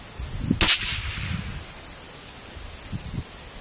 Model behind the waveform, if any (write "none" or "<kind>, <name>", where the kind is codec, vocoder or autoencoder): none